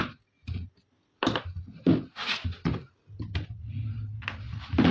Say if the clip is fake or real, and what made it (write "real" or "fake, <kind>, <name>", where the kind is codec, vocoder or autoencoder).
real